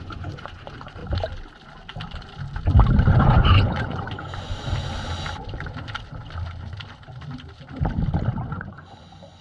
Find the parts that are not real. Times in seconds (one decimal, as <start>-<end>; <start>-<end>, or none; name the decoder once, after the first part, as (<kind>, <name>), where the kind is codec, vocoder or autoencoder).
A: 0.0-1.0 (vocoder, Vocos); 3.2-4.5; 8.5-9.4